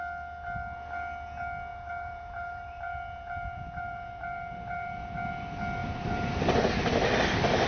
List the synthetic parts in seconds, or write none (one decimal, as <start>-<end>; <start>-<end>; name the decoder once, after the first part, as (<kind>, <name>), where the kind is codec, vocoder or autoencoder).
1.7-5.3 (vocoder, BigVGAN v2); 5.8-6.7

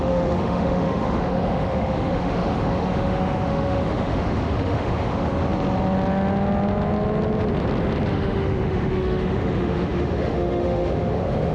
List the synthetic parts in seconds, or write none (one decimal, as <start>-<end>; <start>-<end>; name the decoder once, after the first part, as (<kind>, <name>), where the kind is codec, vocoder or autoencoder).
0.0-5.4 (autoencoder, DAC-VAE); 8.1-11.5